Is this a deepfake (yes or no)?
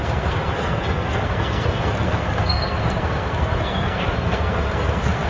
yes